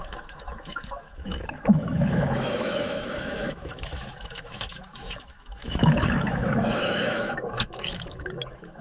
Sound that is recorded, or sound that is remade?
remade